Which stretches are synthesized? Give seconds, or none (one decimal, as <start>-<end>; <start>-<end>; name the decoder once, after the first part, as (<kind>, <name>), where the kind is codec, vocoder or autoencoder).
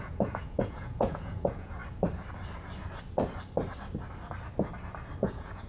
0.0-1.8 (vocoder, Vocos); 5.2-5.7